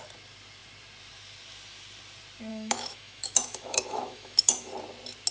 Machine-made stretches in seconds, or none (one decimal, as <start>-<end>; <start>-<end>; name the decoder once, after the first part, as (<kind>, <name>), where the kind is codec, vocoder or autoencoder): 2.5-4.7 (autoencoder, DAC-VAE)